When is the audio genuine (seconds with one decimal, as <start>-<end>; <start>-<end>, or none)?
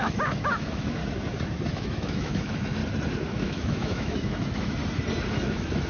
1.0-1.7; 2.8-3.3; 4.8-5.3